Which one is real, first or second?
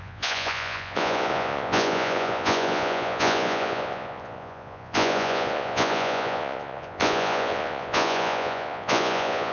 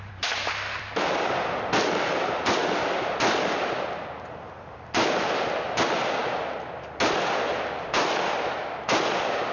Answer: second